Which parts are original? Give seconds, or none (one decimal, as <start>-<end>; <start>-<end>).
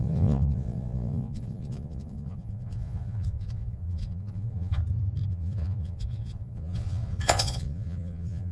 4.8-5.3